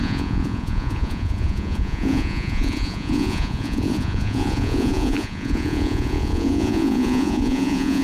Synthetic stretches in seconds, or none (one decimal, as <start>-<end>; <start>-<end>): 0.0-8.0